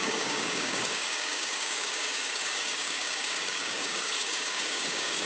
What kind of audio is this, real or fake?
fake